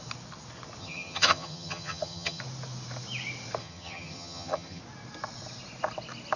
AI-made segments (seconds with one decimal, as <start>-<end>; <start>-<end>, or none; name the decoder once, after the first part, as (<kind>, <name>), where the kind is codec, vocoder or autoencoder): 0.8-2.4 (vocoder, HiFi-GAN); 3.6-4.8